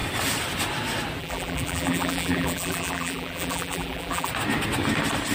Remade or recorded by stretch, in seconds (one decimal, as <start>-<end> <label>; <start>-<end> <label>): 0.0-1.2 recorded; 1.2-4.3 remade; 4.3-5.3 recorded